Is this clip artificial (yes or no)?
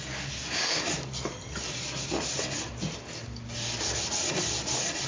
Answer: yes